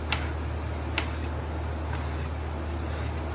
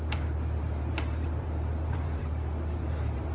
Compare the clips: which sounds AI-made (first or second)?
second